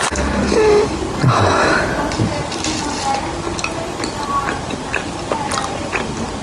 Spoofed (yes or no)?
no